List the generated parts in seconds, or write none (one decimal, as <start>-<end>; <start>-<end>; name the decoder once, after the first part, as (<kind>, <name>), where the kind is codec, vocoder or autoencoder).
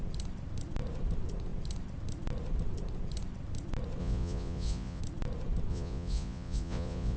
4.0-5.0 (vocoder, Vocos); 5.7-7.2